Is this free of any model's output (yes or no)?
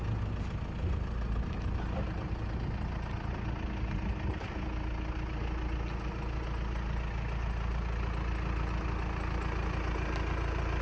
yes